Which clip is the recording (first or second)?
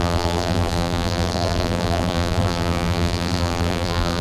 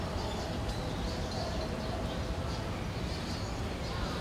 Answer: second